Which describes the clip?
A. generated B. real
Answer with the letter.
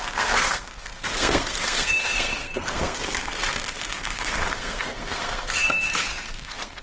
A